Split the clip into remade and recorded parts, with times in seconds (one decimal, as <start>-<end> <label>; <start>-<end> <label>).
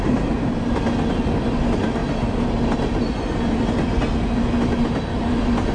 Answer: 0.0-5.7 recorded